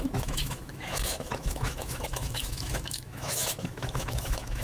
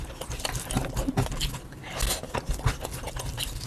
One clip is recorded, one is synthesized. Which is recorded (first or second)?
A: second